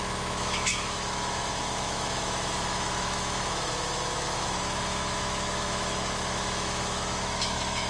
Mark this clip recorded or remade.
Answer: remade